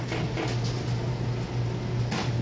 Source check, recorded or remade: recorded